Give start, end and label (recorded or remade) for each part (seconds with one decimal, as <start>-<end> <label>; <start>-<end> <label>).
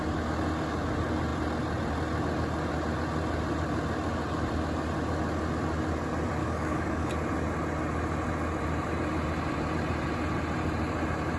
0.0-6.4 recorded; 6.4-7.1 remade; 7.1-11.4 recorded